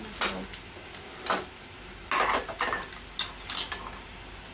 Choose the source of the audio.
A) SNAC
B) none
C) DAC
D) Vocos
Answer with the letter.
B